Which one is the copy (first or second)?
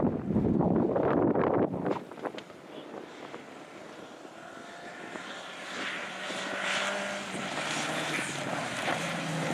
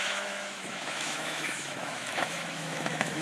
second